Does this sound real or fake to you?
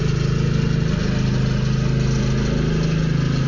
real